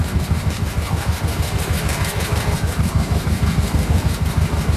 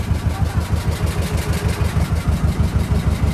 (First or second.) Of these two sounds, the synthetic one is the first